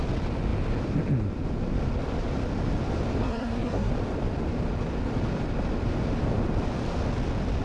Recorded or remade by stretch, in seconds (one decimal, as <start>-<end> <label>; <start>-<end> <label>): 0.0-3.2 recorded; 3.2-3.9 remade; 3.9-7.6 recorded